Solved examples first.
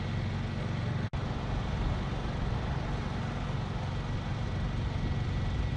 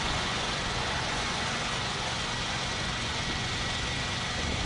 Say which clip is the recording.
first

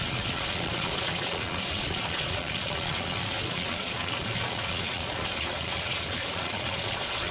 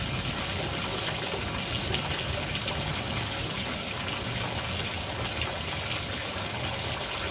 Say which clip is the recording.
second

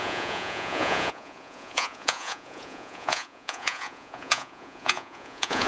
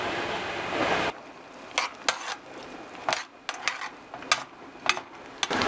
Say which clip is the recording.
second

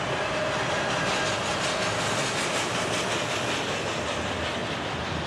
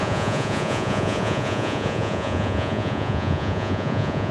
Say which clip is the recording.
first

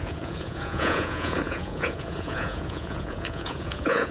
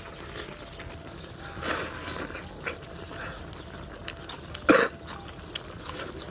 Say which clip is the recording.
second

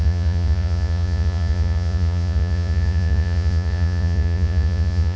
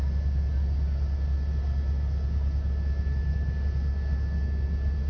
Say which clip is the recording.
second